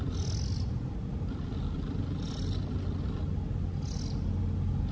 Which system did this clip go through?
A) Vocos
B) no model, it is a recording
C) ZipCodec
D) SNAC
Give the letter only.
B